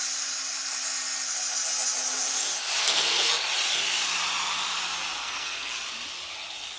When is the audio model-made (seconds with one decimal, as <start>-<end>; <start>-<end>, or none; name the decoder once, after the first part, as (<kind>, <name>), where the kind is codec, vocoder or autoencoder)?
2.8-3.3 (codec, SNAC); 5.2-5.7